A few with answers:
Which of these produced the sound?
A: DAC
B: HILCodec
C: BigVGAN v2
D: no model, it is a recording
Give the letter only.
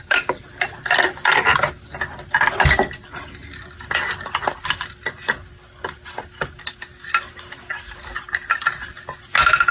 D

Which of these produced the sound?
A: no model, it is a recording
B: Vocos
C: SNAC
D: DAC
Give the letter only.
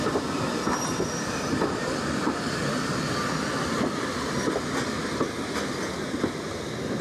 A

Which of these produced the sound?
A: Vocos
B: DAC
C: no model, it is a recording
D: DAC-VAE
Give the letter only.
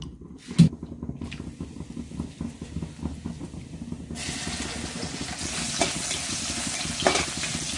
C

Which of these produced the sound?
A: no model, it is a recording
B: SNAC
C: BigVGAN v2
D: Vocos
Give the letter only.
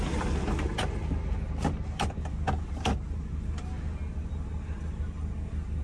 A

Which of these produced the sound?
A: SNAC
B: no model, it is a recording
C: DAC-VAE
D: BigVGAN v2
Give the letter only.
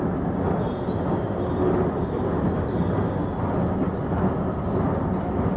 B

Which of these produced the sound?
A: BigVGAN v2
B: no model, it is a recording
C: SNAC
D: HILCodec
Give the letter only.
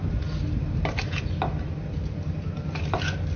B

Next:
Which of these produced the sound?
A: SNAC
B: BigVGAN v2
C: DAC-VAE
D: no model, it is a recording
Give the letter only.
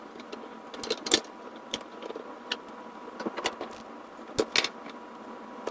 D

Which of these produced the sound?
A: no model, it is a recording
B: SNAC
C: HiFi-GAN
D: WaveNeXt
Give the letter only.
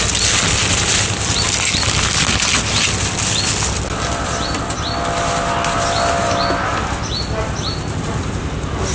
A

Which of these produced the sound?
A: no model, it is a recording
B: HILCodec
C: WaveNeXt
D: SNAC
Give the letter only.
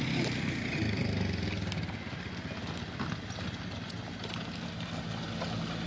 A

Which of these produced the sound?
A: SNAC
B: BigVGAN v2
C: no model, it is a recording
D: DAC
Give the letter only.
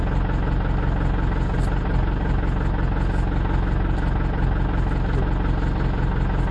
C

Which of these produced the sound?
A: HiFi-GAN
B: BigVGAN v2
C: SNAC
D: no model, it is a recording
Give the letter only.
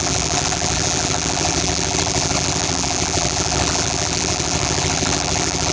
B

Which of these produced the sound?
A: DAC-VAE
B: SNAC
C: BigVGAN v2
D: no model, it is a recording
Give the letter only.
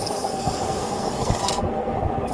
B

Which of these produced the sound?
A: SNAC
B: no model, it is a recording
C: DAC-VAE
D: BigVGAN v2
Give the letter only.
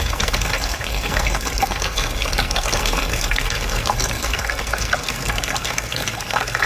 A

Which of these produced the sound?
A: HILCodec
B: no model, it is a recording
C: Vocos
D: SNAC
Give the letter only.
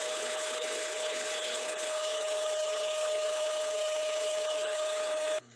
A